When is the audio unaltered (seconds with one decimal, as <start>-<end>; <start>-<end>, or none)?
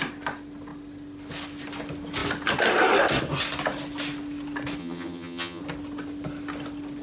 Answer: 0.0-4.8; 5.6-7.0